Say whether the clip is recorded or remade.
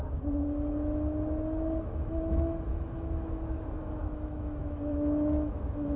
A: remade